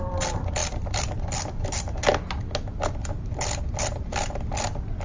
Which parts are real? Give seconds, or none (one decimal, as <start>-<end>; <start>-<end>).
0.0-5.0